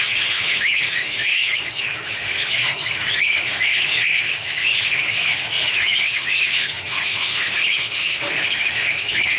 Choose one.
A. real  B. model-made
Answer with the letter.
B